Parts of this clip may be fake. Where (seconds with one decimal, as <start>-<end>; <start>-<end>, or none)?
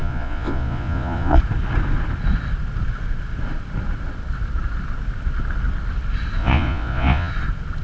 0.0-1.4; 6.4-7.3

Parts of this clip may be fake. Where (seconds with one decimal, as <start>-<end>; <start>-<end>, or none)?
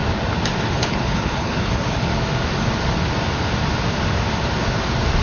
0.7-2.1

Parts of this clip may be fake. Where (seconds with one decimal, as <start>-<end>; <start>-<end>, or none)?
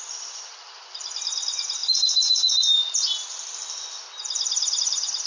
0.0-1.8; 4.8-5.3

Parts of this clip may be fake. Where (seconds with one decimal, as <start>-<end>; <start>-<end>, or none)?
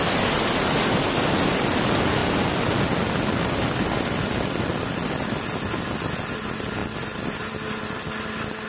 none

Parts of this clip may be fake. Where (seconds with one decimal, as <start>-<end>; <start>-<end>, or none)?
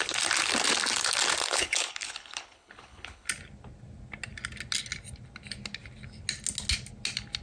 1.4-3.3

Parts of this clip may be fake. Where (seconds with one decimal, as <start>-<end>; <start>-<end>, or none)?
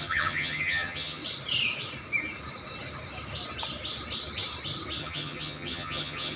0.0-1.2; 5.0-6.4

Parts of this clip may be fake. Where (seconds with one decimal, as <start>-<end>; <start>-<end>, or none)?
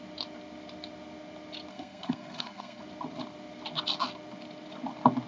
1.7-2.8